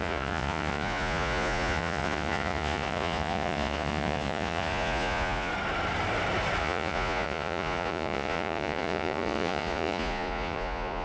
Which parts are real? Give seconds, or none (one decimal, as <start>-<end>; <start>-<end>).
5.5-6.6